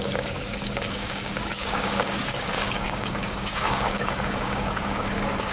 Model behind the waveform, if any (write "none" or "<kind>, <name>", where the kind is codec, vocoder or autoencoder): codec, DAC